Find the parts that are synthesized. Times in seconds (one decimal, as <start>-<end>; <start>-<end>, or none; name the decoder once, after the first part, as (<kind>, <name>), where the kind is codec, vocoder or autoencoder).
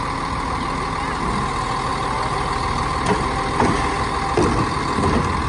none